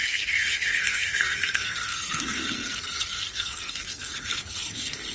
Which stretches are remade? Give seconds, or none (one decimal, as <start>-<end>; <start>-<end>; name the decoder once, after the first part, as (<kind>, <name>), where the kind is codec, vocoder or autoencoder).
0.0-5.1 (codec, SNAC)